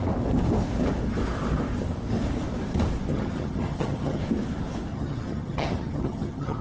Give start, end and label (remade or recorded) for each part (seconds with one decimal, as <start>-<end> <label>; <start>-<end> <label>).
0.0-3.1 recorded; 3.1-4.2 remade; 4.2-4.9 recorded; 4.9-6.6 remade